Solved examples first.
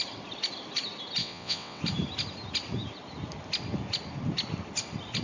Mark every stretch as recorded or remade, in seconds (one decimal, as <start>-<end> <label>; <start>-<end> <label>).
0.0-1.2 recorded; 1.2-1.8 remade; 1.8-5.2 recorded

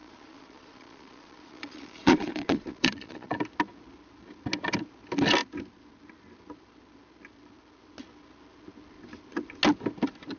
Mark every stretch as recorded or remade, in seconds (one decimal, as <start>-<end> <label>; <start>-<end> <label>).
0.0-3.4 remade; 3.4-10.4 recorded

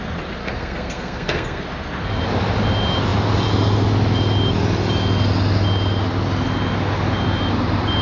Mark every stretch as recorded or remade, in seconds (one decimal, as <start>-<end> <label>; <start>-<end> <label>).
0.0-0.4 recorded; 0.4-1.6 remade; 1.6-8.0 recorded

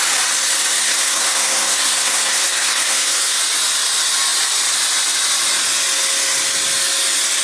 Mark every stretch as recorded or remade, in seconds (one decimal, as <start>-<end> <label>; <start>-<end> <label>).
0.0-0.8 recorded; 0.8-3.4 remade; 3.4-7.4 recorded

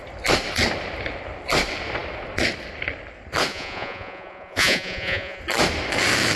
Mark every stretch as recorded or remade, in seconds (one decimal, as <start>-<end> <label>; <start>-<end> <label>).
0.0-3.5 recorded; 3.5-5.4 remade; 5.4-6.4 recorded

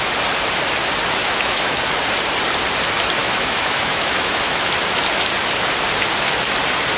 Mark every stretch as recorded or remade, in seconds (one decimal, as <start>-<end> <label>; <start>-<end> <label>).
0.0-1.2 recorded; 1.2-1.8 remade; 1.8-3.2 recorded; 3.2-4.6 remade; 4.6-7.0 recorded

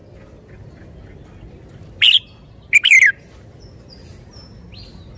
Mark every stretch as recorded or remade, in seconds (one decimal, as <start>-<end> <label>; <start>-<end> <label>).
0.0-5.2 recorded